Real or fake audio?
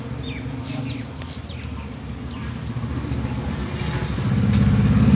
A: real